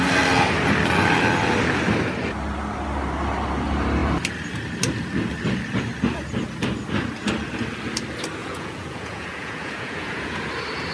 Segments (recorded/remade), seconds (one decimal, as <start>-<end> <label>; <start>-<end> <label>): 0.0-8.4 recorded; 8.4-10.4 remade; 10.4-10.9 recorded